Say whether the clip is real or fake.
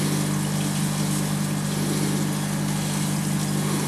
real